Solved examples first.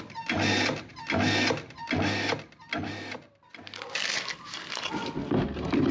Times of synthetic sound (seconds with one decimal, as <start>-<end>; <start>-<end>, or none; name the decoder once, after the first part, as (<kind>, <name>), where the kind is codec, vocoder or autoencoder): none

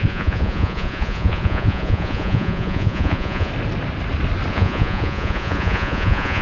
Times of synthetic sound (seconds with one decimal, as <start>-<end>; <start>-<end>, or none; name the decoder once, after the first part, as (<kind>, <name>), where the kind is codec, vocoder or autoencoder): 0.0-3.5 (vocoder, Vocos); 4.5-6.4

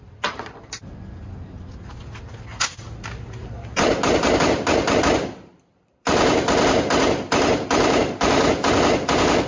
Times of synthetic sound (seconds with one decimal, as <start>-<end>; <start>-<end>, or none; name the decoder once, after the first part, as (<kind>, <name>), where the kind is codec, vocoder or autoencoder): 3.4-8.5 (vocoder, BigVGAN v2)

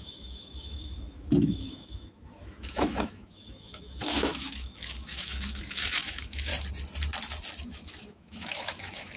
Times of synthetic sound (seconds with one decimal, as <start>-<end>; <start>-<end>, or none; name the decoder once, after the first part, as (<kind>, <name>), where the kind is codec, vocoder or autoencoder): 0.0-6.5 (autoencoder, DAC-VAE); 7.6-9.2